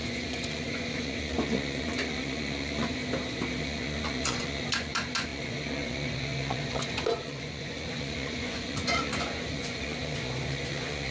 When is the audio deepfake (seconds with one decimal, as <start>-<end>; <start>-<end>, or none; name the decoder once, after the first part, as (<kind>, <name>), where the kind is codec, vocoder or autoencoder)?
0.0-3.0 (vocoder, Vocos); 3.6-11.1